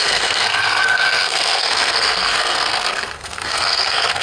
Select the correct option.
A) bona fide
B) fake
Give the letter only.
B